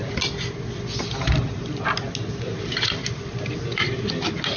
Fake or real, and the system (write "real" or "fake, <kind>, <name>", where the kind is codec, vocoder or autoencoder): real